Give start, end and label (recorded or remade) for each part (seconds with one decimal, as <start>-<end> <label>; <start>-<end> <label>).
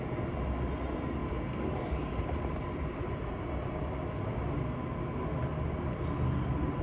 0.0-6.8 recorded